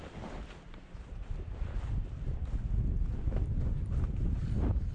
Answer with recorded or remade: recorded